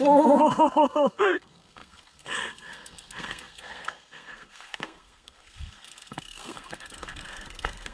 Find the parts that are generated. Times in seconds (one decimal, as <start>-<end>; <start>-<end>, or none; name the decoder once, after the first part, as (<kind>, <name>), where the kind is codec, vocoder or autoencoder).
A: 0.0-7.9 (codec, SNAC)